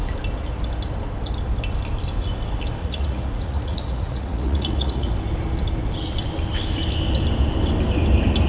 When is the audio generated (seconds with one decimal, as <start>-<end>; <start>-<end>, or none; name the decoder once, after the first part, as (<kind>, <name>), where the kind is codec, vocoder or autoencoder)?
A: 2.8-5.1 (vocoder, Vocos)